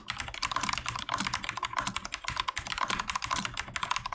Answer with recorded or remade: recorded